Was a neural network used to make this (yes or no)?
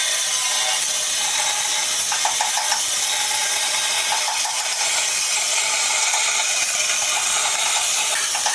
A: no